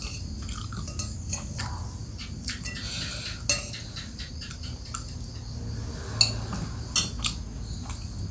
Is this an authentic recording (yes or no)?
yes